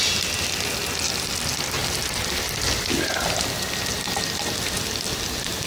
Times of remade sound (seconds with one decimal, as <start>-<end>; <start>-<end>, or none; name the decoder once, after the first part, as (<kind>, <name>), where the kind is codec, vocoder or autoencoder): none